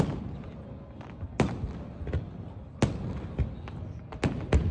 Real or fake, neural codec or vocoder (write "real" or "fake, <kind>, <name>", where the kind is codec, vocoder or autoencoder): real